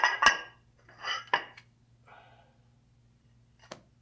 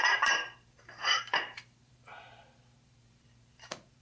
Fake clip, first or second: second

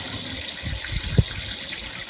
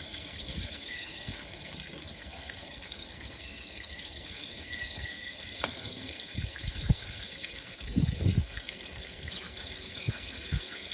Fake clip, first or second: second